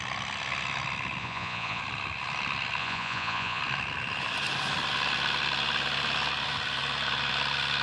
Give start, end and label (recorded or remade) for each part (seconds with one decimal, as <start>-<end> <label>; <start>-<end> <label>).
0.0-1.2 recorded; 1.2-1.8 remade; 1.8-2.8 recorded; 2.8-3.6 remade; 3.6-7.8 recorded